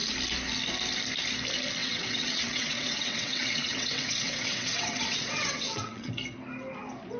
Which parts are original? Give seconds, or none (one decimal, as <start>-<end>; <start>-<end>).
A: 0.0-1.8; 6.1-7.2